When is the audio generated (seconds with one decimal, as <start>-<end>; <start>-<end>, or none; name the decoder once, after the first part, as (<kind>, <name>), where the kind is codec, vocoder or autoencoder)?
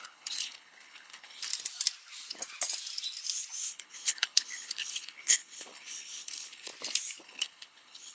0.0-1.5 (codec, HILCodec); 3.7-6.7; 7.2-8.1